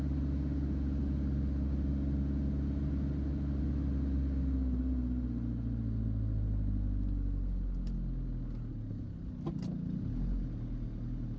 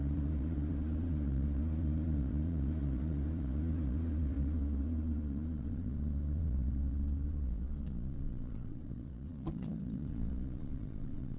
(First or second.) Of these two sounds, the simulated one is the second